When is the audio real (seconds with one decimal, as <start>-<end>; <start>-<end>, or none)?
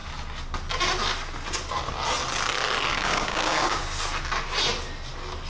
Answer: 0.0-2.9; 3.8-5.5